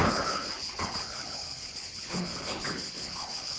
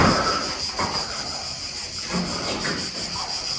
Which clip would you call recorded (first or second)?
second